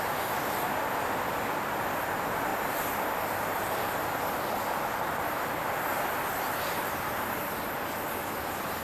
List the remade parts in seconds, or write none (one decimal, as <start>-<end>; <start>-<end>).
none